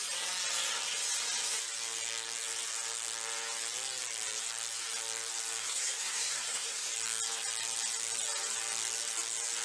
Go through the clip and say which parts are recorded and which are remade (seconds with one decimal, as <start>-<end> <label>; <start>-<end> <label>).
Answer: 0.0-5.6 recorded; 5.6-6.9 remade; 6.9-9.6 recorded